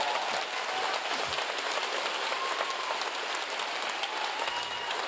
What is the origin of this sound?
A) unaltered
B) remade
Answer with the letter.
A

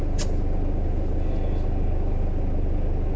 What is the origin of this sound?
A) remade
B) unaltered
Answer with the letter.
B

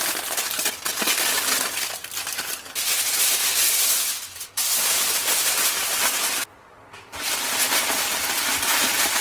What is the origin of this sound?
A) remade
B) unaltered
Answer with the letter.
B